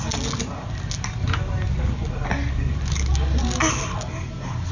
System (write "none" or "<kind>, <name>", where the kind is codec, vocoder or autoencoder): none